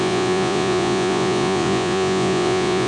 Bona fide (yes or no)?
no